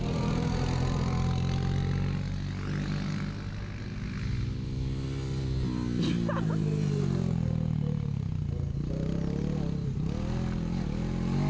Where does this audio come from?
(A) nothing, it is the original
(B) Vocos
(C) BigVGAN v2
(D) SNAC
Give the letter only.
A